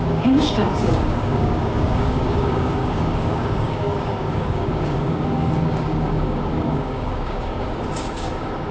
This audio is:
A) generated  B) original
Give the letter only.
A